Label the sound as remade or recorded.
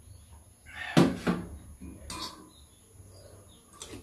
recorded